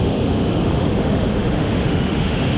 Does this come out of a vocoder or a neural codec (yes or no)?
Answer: yes